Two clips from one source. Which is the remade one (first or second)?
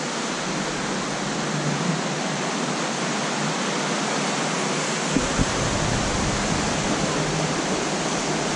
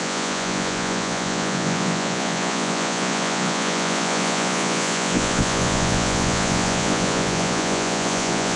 second